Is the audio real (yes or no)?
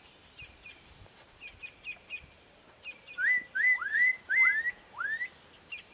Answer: no